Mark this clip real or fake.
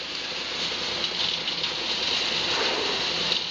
real